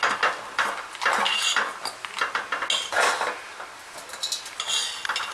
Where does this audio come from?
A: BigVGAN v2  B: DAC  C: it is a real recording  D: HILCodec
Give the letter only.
C